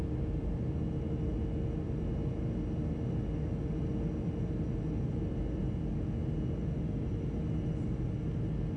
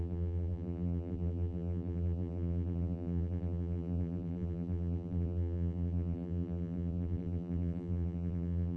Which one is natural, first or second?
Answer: first